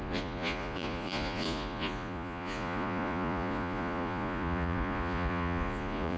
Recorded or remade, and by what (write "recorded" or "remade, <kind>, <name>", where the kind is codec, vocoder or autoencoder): remade, vocoder, Vocos